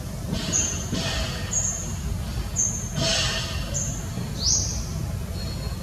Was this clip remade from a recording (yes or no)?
no